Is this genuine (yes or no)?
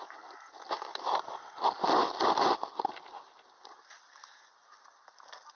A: yes